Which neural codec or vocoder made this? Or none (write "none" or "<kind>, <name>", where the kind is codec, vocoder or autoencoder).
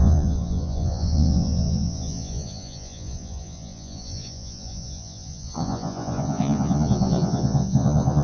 vocoder, Vocos